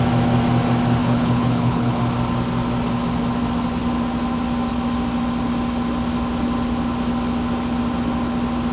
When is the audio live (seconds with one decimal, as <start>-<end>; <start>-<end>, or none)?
0.0-1.0; 2.0-8.7